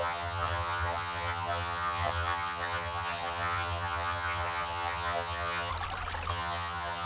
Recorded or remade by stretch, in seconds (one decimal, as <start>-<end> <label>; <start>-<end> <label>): 0.0-5.7 remade; 5.7-6.3 recorded; 6.3-7.1 remade